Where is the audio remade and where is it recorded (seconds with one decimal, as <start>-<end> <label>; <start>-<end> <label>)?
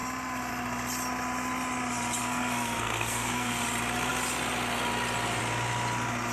0.0-2.2 recorded; 2.2-3.6 remade; 3.6-6.3 recorded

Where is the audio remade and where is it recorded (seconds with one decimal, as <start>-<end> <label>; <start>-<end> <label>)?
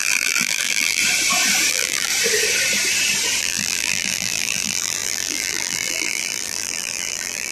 0.0-1.0 remade; 1.0-1.7 recorded; 1.7-2.1 remade; 2.1-3.4 recorded; 3.4-7.5 remade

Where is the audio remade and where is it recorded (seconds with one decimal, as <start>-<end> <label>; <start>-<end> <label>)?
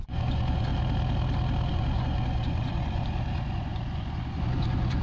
0.0-0.7 remade; 0.7-1.7 recorded; 1.7-5.0 remade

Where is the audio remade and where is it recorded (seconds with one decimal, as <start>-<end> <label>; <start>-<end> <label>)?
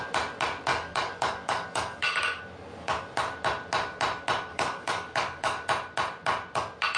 0.0-0.7 recorded; 0.7-2.4 remade; 2.4-4.5 recorded; 4.5-5.7 remade; 5.7-7.0 recorded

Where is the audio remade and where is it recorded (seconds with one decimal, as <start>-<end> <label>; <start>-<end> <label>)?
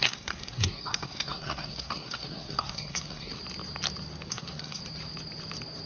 0.0-3.4 remade; 3.4-4.3 recorded; 4.3-4.8 remade; 4.8-5.9 recorded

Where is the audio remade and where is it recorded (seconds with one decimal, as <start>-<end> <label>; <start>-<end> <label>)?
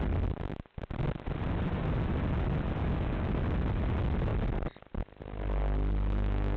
0.0-2.8 recorded; 2.8-3.4 remade; 3.4-6.6 recorded